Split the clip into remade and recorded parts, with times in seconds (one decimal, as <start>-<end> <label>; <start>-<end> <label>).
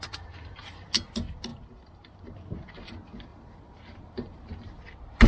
0.0-1.5 recorded; 1.5-2.6 remade; 2.6-3.3 recorded; 3.3-4.8 remade; 4.8-5.3 recorded